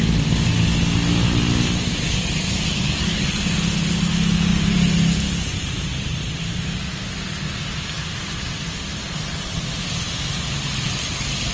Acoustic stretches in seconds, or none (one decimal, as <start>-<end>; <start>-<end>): 0.0-4.5; 6.8-8.9; 9.9-11.5